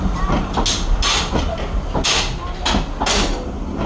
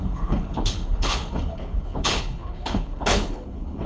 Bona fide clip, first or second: first